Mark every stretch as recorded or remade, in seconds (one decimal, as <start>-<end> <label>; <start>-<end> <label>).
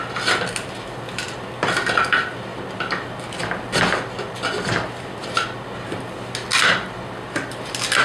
0.0-8.0 recorded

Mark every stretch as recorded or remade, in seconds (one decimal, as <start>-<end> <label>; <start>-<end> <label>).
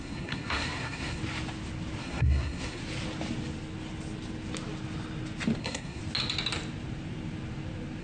0.0-1.2 remade; 1.2-2.0 recorded; 2.0-2.8 remade; 2.8-5.6 recorded; 5.6-6.0 remade; 6.0-8.0 recorded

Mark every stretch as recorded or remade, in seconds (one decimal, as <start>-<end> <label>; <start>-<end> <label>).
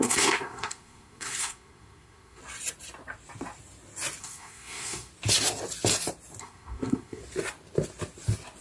0.0-2.4 remade; 2.4-4.2 recorded; 4.2-5.1 remade; 5.1-6.4 recorded; 6.4-7.2 remade; 7.2-8.6 recorded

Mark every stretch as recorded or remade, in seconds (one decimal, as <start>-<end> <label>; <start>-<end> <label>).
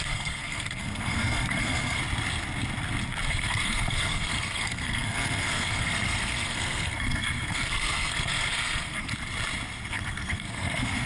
0.0-2.0 remade; 2.0-3.3 recorded; 3.3-9.1 remade; 9.1-9.9 recorded; 9.9-11.1 remade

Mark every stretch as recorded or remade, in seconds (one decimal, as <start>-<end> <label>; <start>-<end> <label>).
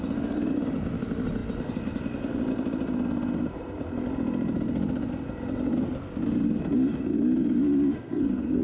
0.0-8.0 recorded; 8.0-8.6 remade